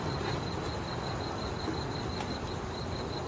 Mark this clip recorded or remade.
recorded